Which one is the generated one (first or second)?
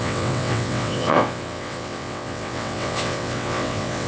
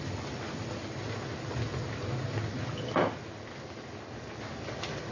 first